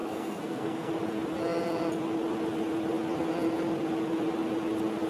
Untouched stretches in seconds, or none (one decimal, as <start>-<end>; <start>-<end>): 0.9-5.1